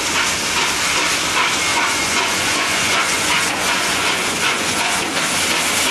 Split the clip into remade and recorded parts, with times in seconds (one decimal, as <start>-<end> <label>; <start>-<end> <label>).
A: 0.0-1.7 recorded; 1.7-5.2 remade; 5.2-5.9 recorded

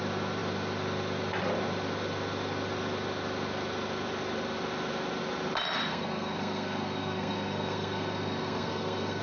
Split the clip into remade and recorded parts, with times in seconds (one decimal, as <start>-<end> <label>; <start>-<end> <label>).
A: 0.0-5.9 recorded; 5.9-9.2 remade